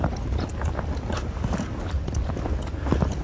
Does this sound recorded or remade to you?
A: recorded